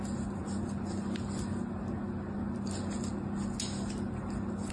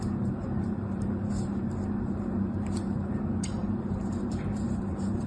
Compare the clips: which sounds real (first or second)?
first